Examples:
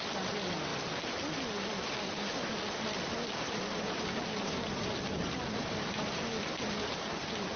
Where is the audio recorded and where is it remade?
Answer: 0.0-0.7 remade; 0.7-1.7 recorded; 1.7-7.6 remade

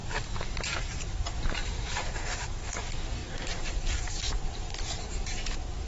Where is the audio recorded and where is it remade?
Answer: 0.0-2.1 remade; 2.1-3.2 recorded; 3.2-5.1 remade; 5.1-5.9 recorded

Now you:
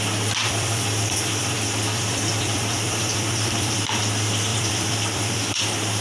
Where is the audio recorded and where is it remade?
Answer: 0.0-0.4 recorded; 0.4-4.0 remade; 4.0-4.5 recorded; 4.5-5.6 remade; 5.6-6.0 recorded

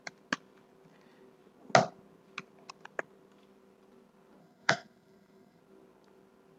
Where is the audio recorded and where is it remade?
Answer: 0.0-4.4 recorded; 4.4-5.6 remade; 5.6-6.6 recorded

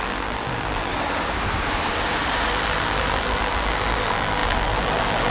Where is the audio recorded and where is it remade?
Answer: 0.0-0.9 remade; 0.9-2.5 recorded; 2.5-5.3 remade